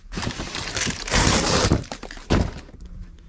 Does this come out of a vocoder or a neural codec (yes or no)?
yes